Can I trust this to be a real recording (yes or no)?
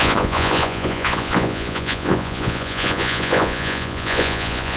no